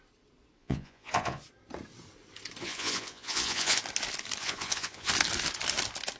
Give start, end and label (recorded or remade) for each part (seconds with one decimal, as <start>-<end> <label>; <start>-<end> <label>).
0.0-0.6 recorded; 0.6-1.4 remade; 1.4-2.6 recorded; 2.6-3.8 remade; 3.8-4.4 recorded; 4.4-5.1 remade; 5.1-6.2 recorded